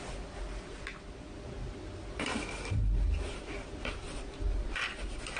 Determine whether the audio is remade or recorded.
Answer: recorded